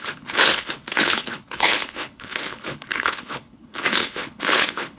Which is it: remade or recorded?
remade